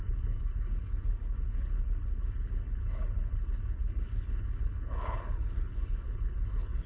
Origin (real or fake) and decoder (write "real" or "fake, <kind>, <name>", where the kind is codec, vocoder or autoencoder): fake, codec, HILCodec